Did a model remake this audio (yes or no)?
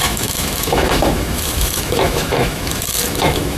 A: yes